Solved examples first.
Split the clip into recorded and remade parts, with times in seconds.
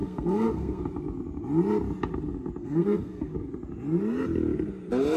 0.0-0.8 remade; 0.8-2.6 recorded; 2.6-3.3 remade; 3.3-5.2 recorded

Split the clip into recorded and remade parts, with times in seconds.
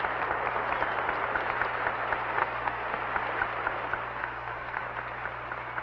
0.0-2.4 recorded; 2.4-3.0 remade; 3.0-4.2 recorded; 4.2-4.8 remade; 4.8-5.8 recorded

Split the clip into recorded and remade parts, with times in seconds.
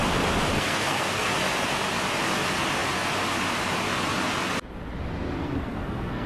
0.0-0.5 recorded; 0.5-1.3 remade; 1.3-5.4 recorded; 5.4-6.3 remade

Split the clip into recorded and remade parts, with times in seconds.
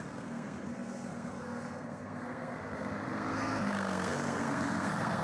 0.0-5.2 remade